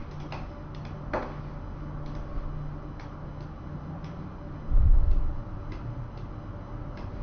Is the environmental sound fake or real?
real